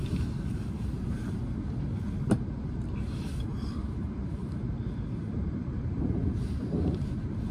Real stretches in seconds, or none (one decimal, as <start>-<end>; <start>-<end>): 1.4-3.5